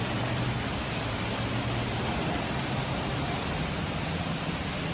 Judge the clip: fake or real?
real